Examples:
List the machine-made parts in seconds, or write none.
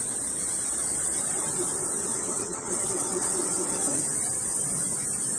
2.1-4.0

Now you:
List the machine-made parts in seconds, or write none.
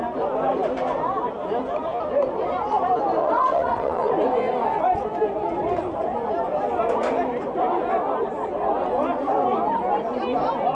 3.2-4.1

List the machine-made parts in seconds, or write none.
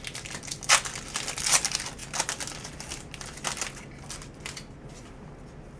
none